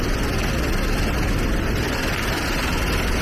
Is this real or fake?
real